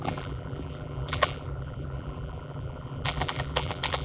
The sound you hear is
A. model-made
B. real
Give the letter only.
A